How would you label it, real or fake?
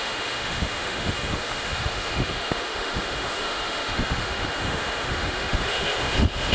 fake